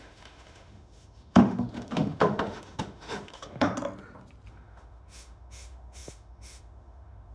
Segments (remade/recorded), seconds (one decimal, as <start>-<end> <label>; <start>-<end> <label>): 0.0-3.7 remade; 3.7-4.5 recorded; 4.5-7.3 remade

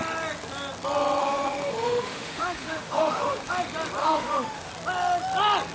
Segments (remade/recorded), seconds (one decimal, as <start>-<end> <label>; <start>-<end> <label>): 0.0-1.2 recorded; 1.2-3.5 remade; 3.5-4.0 recorded; 4.0-4.7 remade; 4.7-5.7 recorded

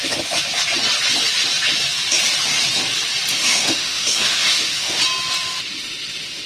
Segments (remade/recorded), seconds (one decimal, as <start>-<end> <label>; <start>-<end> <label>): 0.0-3.3 recorded; 3.3-5.0 remade; 5.0-5.5 recorded; 5.5-6.5 remade

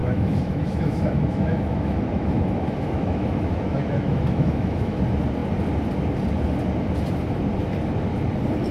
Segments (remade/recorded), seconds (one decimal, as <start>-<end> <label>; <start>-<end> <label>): 0.0-5.0 remade; 5.0-8.7 recorded